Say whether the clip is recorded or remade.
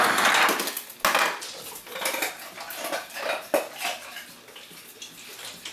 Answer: recorded